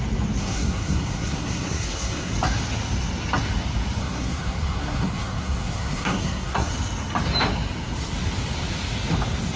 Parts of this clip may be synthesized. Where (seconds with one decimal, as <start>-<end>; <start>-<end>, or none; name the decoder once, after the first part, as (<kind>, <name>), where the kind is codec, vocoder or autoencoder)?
0.4-2.3 (codec, SNAC); 4.0-6.7